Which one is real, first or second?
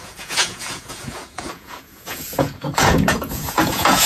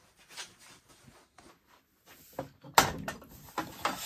second